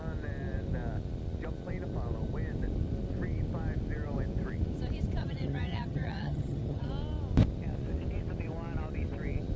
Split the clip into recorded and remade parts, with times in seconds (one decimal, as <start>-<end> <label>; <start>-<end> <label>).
0.0-5.2 recorded; 5.2-6.9 remade; 6.9-9.6 recorded